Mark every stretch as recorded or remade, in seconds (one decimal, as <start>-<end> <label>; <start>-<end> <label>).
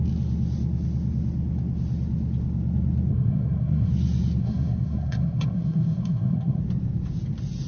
0.0-3.1 recorded; 3.1-3.9 remade; 3.9-4.4 recorded; 4.4-6.6 remade; 6.6-7.7 recorded